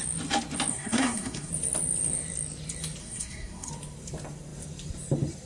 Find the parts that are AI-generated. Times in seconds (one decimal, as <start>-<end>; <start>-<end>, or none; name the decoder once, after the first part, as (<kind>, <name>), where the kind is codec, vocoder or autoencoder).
0.7-1.5 (codec, SNAC); 3.0-3.7